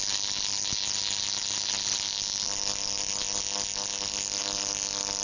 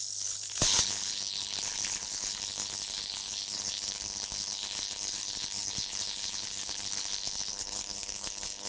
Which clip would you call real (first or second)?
first